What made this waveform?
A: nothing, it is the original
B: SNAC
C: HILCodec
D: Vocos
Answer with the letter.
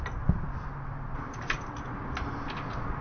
A